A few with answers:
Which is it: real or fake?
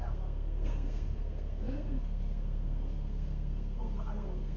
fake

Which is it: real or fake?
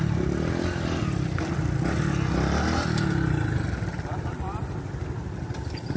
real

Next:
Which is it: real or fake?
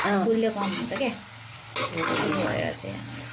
real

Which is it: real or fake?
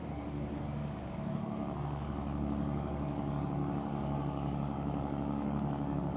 fake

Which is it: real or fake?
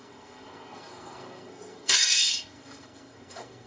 fake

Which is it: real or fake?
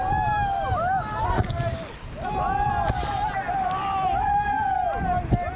real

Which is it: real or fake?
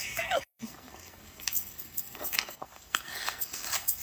fake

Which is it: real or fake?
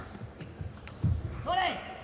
fake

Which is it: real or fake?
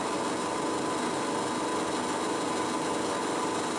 real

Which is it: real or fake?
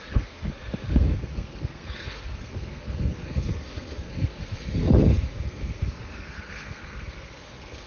fake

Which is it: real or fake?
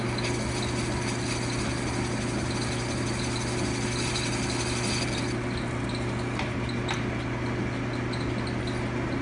real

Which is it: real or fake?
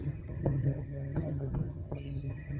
fake